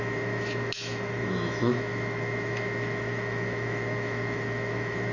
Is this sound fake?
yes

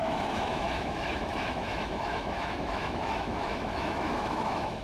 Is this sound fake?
yes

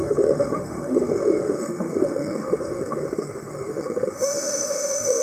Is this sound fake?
yes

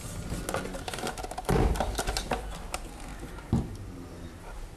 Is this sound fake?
no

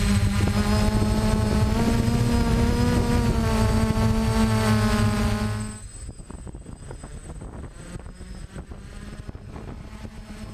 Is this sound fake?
no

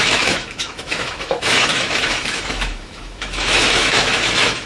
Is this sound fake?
yes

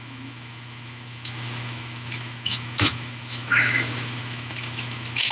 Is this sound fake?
yes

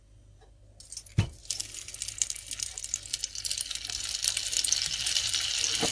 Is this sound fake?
no